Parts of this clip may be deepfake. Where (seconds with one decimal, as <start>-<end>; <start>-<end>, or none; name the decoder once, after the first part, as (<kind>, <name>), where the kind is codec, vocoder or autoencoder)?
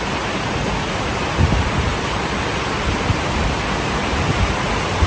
1.9-3.7 (vocoder, BigVGAN v2)